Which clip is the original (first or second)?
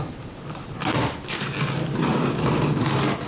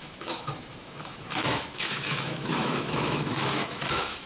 first